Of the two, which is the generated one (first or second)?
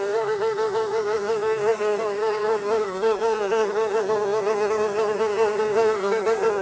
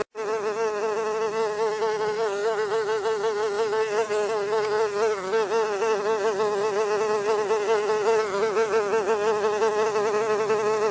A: first